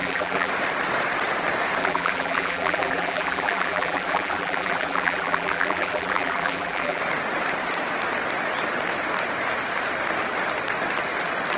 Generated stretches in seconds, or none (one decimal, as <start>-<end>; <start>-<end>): 0.0-0.5; 1.8-7.0